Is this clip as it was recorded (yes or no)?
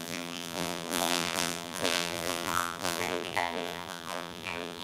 no